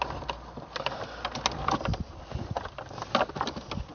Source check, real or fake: real